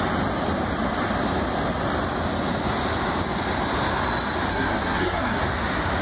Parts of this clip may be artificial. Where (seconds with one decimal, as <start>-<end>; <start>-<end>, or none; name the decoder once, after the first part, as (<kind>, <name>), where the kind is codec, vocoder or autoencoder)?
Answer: 4.5-5.4 (codec, SNAC)